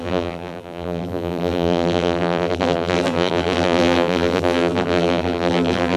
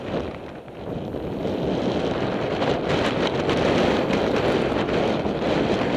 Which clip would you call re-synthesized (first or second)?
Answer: first